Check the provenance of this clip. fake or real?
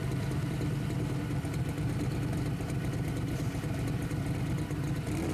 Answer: real